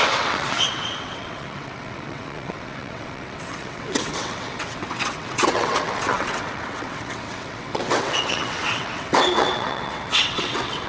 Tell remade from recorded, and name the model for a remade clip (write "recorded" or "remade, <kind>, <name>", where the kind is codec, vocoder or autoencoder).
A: remade, vocoder, WaveNeXt